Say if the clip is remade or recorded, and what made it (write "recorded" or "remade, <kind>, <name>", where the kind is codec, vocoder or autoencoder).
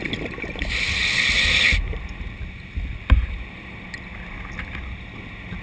recorded